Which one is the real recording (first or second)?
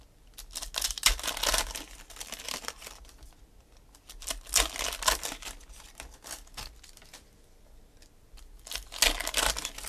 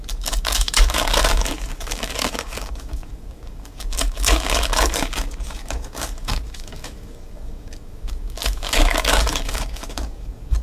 first